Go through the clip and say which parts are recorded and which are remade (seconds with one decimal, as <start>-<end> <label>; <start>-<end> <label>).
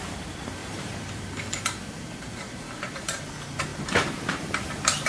0.0-0.6 recorded; 0.6-3.2 remade; 3.2-3.7 recorded; 3.7-5.1 remade